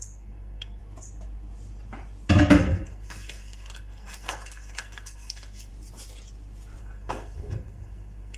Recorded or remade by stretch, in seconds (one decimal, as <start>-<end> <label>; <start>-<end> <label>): 0.0-0.8 remade; 0.8-2.5 recorded; 2.5-5.7 remade; 5.7-6.8 recorded; 6.8-8.4 remade